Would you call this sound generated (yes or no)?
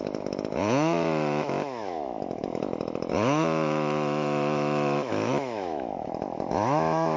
yes